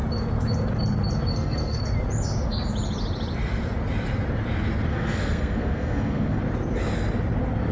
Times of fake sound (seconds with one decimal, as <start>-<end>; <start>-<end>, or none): 1.3-1.8; 4.9-6.4